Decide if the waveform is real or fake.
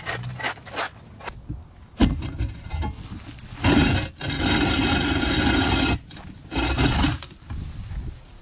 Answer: real